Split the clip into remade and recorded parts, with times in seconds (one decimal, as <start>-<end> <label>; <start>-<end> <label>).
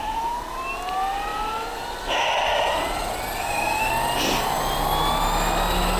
0.0-3.4 recorded; 3.4-3.9 remade; 3.9-6.0 recorded